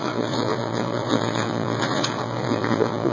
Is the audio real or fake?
fake